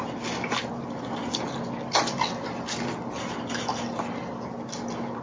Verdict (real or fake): real